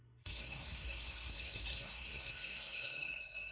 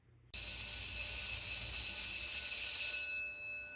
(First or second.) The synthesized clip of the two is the first